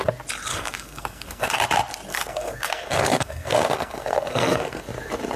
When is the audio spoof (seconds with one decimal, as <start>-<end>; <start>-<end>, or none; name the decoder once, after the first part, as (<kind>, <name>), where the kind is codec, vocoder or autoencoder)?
0.5-1.6 (codec, SNAC); 2.1-4.8